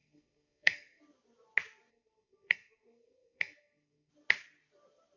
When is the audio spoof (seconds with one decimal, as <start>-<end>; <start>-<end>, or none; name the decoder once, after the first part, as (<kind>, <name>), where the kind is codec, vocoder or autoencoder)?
0.0-1.0 (codec, SNAC); 1.9-4.1